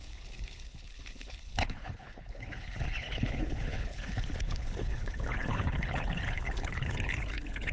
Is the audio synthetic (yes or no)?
yes